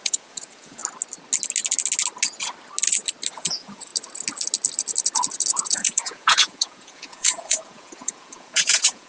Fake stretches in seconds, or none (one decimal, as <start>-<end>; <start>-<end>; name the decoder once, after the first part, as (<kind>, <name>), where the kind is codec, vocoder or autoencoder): 0.0-0.8 (vocoder, Vocos); 3.3-3.9; 5.7-9.1

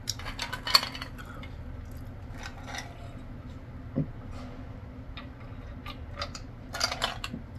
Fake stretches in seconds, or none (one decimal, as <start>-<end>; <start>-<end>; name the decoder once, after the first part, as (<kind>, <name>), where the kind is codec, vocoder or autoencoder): none

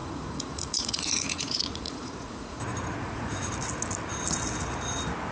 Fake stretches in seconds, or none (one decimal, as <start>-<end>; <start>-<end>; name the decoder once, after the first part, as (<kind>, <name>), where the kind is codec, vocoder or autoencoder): 0.0-2.6 (vocoder, Vocos); 3.0-3.5